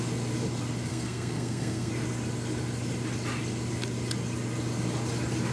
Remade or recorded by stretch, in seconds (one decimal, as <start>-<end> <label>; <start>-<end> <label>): 0.0-0.9 recorded; 0.9-1.9 remade; 1.9-5.5 recorded